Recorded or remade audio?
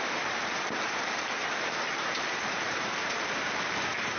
remade